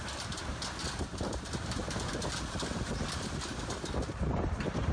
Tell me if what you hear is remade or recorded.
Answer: recorded